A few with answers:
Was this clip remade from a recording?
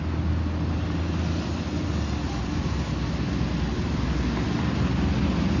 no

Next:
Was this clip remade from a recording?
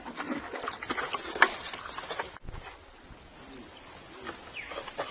no